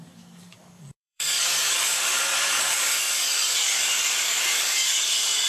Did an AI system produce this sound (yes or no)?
yes